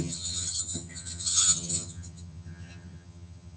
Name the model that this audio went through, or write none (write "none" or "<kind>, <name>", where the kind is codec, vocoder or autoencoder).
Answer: vocoder, HiFi-GAN